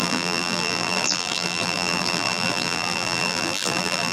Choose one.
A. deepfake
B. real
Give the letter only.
A